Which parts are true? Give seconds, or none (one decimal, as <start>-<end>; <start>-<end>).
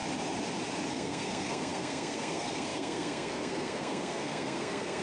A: 0.0-0.9